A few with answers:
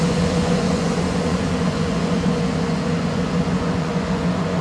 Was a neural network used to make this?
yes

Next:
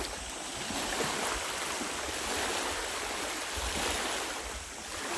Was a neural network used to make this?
no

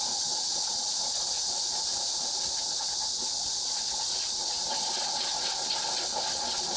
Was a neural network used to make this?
no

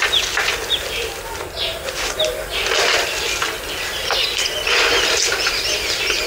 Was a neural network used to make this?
no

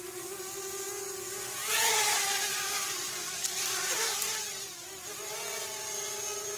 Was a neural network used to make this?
no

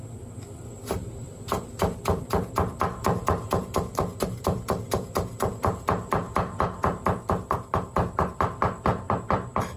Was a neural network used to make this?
yes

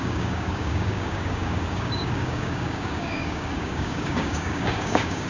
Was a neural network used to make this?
yes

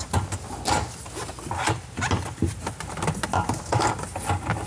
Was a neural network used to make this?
no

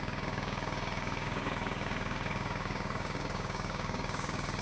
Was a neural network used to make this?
yes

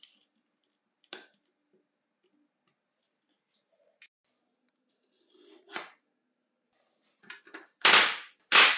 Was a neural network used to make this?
no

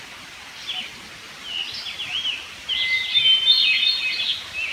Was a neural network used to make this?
no